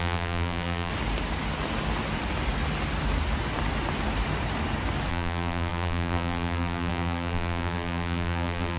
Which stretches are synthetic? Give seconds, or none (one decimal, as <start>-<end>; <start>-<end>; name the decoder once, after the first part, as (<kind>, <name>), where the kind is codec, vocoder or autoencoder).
0.0-0.9 (vocoder, BigVGAN v2); 5.1-8.8